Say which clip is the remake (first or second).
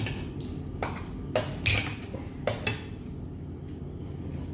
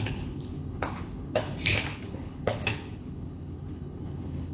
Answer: second